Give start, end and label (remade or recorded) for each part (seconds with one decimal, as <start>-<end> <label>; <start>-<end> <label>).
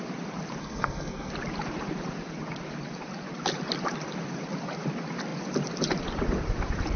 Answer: 0.0-0.6 recorded; 0.6-1.3 remade; 1.3-7.0 recorded